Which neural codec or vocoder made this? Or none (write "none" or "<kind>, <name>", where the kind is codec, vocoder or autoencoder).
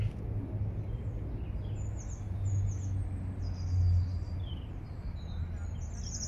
none